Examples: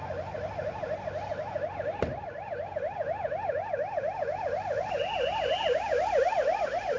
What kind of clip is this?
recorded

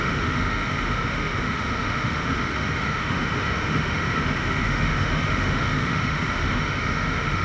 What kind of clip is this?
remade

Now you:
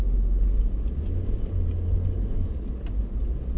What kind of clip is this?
recorded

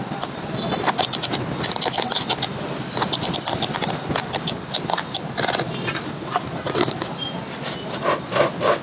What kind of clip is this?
recorded